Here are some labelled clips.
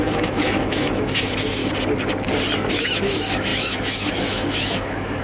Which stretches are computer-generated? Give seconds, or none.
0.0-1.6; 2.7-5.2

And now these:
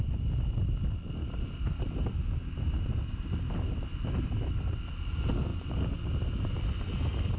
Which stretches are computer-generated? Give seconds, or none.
none